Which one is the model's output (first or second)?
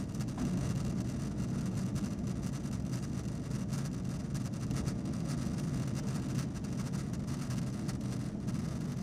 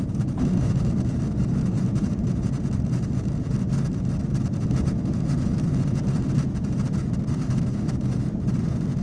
second